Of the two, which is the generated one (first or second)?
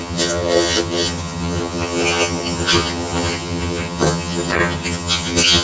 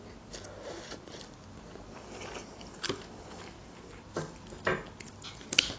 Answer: first